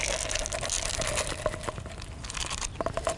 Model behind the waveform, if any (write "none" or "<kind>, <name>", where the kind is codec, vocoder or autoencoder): none